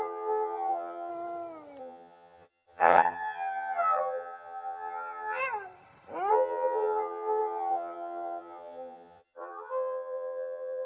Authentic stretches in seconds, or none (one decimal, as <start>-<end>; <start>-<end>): 1.1-1.8; 5.4-6.3